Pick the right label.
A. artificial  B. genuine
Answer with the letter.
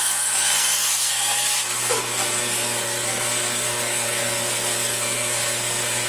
A